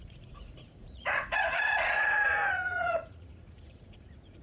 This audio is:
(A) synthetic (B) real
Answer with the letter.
A